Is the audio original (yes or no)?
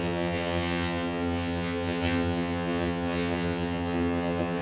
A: no